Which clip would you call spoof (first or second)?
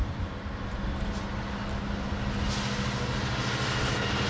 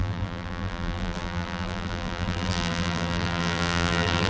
second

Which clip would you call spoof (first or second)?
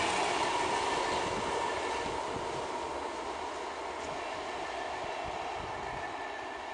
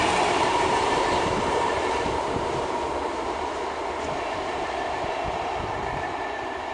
second